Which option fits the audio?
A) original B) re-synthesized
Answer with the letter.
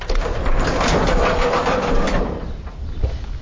A